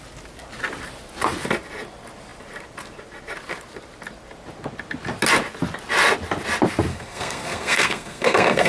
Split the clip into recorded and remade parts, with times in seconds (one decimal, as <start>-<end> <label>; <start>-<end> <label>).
0.0-6.9 recorded; 6.9-8.7 remade